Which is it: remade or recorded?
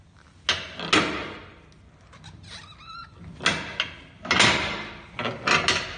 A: recorded